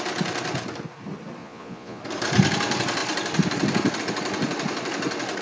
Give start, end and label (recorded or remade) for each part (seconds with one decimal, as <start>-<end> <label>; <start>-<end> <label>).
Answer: 0.0-1.4 recorded; 1.4-2.0 remade; 2.0-5.4 recorded